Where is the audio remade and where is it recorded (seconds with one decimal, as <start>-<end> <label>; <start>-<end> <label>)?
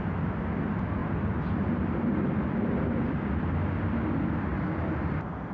0.0-5.5 recorded